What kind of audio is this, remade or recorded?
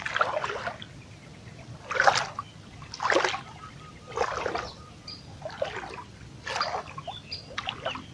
recorded